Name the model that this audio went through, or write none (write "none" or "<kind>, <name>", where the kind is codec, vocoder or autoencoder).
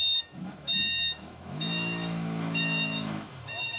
autoencoder, DAC-VAE